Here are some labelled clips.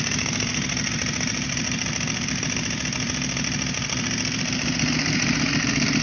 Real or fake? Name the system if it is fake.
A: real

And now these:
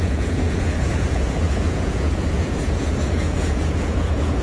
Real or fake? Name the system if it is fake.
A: fake, vocoder, Vocos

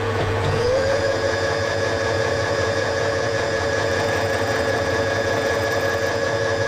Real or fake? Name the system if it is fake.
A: fake, vocoder, Vocos